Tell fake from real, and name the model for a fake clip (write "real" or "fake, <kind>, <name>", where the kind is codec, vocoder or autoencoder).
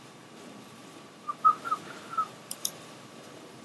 fake, vocoder, BigVGAN v2